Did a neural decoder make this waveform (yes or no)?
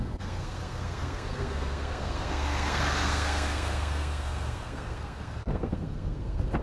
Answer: yes